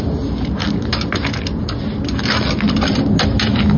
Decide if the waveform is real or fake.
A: real